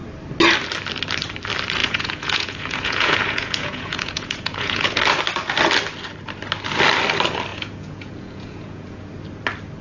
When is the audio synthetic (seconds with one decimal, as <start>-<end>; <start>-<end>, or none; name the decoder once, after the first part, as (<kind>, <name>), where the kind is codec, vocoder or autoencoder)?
1.8-5.0 (vocoder, Vocos); 7.5-9.1

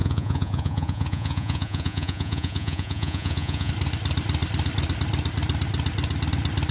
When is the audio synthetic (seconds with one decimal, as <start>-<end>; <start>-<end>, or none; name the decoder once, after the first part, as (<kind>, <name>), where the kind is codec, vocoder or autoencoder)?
0.0-3.7 (vocoder, Vocos)

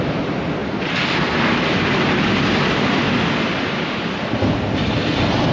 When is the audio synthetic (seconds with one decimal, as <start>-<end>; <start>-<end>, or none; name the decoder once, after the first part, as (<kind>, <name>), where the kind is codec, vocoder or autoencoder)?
none

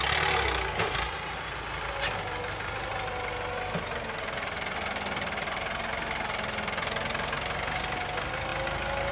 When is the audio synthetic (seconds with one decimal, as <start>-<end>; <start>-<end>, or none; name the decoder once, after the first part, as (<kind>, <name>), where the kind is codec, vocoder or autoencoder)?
none